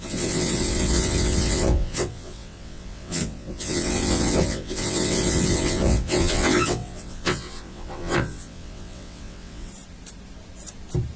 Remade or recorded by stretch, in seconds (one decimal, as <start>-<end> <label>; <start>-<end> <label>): 0.0-9.7 remade; 9.7-11.2 recorded